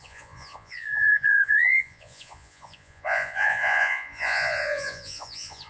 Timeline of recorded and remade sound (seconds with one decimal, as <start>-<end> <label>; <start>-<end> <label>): 0.0-5.7 remade